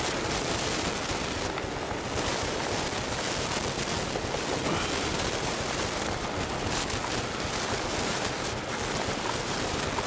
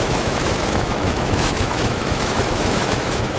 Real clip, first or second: first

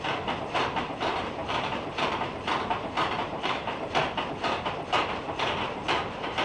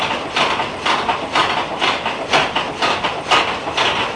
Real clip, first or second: second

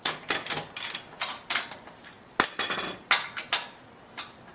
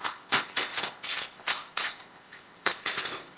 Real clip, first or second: first